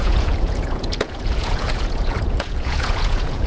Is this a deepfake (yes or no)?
yes